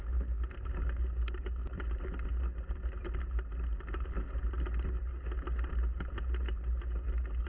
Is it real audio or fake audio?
real